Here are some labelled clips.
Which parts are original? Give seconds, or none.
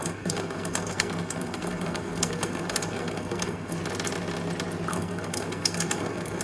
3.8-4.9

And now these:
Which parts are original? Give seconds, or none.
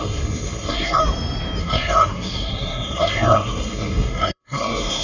1.0-1.6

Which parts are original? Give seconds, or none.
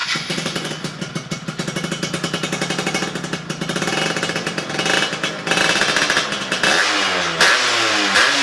1.0-8.4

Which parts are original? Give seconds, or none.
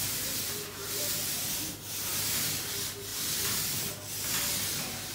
0.0-0.8; 1.5-3.1; 3.9-5.1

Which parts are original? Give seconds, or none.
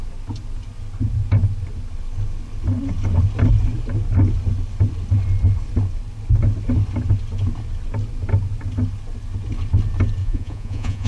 0.0-10.2